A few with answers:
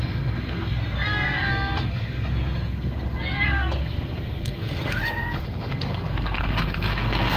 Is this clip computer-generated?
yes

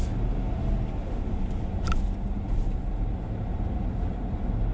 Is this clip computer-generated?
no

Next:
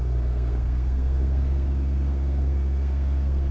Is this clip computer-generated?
yes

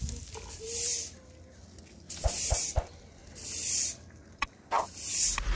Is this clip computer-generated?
no